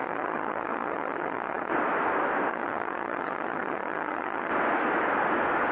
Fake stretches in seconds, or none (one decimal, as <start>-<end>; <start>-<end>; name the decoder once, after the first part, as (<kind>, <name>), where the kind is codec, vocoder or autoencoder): 0.0-1.7 (vocoder, HiFi-GAN); 2.5-4.5